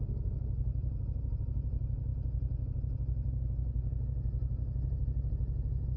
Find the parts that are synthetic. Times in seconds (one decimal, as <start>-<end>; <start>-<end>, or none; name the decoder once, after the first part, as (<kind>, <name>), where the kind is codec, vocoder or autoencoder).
none